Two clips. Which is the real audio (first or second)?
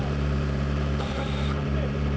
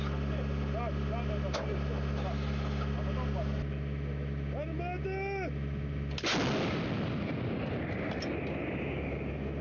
second